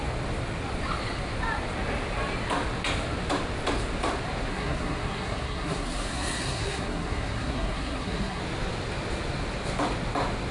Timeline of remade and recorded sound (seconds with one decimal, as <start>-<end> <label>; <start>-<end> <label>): 0.0-4.5 recorded; 4.5-8.4 remade; 8.4-10.5 recorded